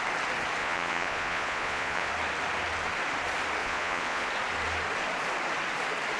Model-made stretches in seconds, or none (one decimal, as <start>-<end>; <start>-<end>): 0.6-2.1; 3.6-4.3